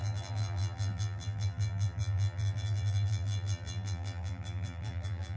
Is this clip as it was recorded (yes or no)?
no